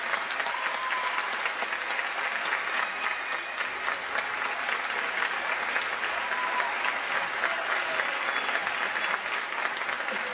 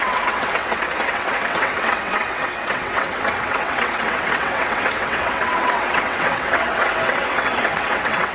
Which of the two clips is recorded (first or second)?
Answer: first